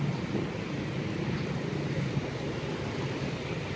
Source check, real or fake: real